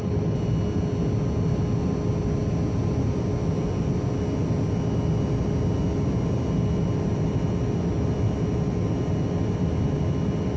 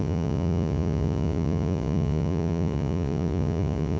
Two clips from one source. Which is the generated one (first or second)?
second